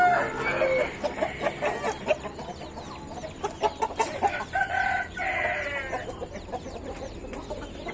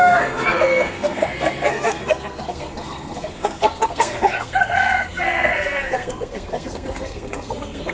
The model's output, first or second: second